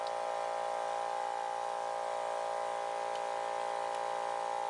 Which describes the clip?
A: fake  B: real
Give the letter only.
B